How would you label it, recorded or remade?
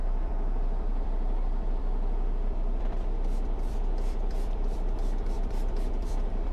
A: remade